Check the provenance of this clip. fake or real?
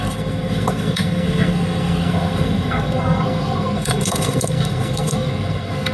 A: fake